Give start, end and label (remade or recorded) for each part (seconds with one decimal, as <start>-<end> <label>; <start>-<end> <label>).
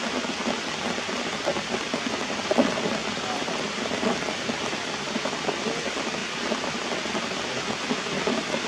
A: 0.0-8.7 recorded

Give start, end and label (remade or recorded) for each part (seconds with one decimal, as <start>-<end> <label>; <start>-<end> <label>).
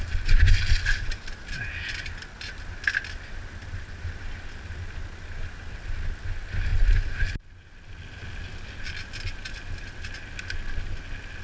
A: 0.0-11.4 recorded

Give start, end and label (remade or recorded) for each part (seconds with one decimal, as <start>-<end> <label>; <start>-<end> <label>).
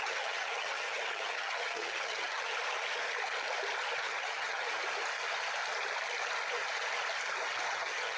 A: 0.0-2.5 remade; 2.5-4.0 recorded; 4.0-4.7 remade; 4.7-7.7 recorded; 7.7-8.2 remade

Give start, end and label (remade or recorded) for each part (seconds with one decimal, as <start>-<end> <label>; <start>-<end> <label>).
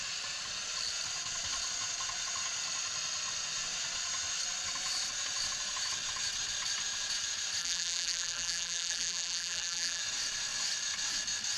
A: 0.0-7.6 recorded; 7.6-10.0 remade; 10.0-11.6 recorded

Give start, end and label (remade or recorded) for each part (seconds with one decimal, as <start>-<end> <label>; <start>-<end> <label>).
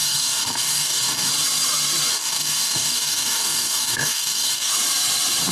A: 0.0-1.3 remade; 1.3-2.1 recorded; 2.1-4.7 remade; 4.7-5.5 recorded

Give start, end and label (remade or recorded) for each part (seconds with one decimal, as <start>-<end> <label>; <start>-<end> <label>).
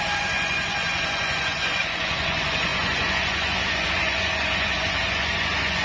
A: 0.0-5.8 remade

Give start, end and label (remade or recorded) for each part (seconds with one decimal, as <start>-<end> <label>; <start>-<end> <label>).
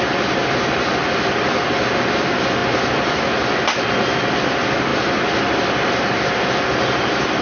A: 0.0-7.4 recorded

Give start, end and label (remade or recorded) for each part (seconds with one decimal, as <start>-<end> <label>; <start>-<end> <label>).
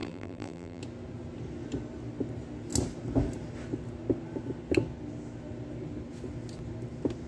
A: 0.0-0.8 remade; 0.8-7.3 recorded